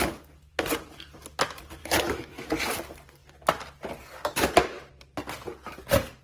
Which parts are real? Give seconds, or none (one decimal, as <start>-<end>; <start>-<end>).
0.0-1.8; 2.5-6.2